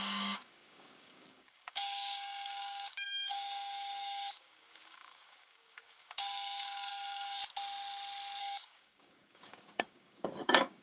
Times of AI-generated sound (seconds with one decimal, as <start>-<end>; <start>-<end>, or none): 0.0-7.4; 8.4-10.8